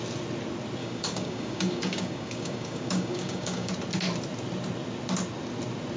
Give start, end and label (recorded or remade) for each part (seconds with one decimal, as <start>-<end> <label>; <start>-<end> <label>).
0.0-0.8 recorded; 0.8-3.7 remade; 3.7-6.0 recorded